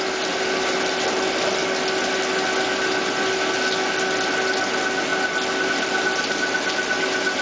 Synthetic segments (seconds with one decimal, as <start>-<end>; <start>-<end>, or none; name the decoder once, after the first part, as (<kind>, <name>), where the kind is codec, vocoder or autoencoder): none